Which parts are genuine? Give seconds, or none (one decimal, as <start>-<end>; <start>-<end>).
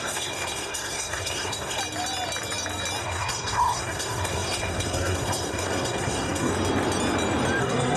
1.8-3.0; 6.5-7.6